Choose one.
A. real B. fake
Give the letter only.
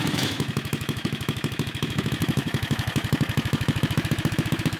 B